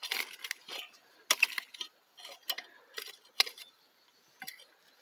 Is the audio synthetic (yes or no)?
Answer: no